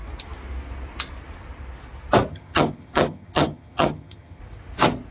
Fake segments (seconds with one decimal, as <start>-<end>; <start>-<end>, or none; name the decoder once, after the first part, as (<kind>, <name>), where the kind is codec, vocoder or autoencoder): 2.3-4.4 (vocoder, HiFi-GAN)